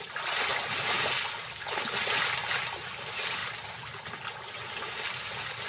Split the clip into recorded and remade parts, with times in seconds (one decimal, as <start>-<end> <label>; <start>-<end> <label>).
0.0-0.5 recorded; 0.5-1.1 remade; 1.1-5.7 recorded